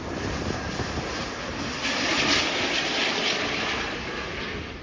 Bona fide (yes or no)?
yes